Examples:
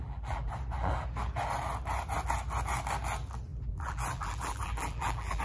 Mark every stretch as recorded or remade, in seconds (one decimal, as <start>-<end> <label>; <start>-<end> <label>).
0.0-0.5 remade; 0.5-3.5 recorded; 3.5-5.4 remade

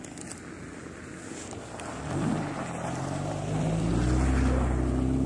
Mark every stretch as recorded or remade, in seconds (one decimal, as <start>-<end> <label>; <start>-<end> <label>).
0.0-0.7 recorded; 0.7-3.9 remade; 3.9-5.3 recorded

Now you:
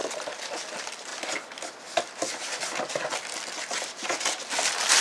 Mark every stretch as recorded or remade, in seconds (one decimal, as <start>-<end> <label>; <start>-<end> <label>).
0.0-0.5 remade; 0.5-5.0 recorded

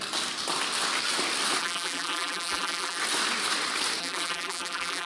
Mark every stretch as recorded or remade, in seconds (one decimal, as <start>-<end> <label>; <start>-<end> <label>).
0.0-1.6 recorded; 1.6-3.0 remade; 3.0-4.0 recorded; 4.0-5.1 remade

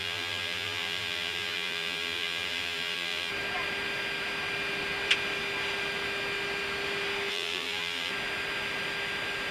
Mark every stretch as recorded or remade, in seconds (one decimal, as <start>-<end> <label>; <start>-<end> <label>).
0.0-3.3 remade; 3.3-7.3 recorded; 7.3-8.1 remade; 8.1-9.5 recorded

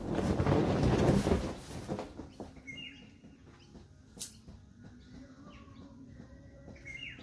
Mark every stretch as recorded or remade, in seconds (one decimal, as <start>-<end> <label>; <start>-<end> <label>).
0.0-3.4 remade; 3.4-5.6 recorded; 5.6-7.2 remade